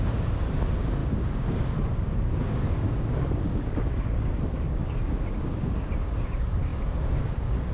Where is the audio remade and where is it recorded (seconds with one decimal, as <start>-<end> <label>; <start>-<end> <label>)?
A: 0.0-7.7 remade